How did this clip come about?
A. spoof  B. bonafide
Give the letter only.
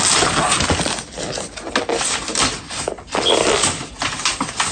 B